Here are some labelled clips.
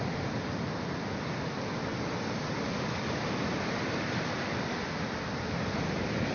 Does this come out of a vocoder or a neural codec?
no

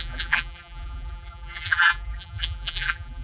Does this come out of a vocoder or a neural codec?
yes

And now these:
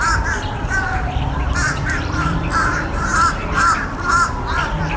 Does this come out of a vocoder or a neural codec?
yes